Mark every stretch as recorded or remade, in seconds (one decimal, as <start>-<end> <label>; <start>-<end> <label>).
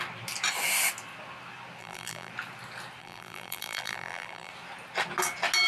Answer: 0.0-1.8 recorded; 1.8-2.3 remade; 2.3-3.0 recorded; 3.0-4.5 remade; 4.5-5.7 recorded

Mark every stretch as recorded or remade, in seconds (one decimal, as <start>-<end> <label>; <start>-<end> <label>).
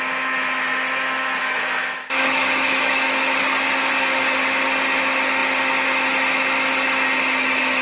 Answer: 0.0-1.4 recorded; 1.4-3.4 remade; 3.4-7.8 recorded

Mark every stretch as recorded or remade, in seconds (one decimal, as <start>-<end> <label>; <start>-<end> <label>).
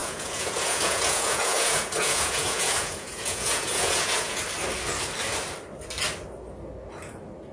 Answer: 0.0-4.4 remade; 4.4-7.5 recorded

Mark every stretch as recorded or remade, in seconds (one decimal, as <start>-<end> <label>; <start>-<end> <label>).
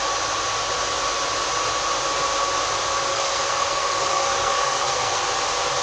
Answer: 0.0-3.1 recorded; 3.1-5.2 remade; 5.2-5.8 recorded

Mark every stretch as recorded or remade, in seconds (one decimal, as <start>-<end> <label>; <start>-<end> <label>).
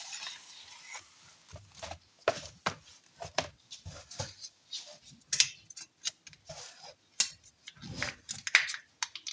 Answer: 0.0-9.3 recorded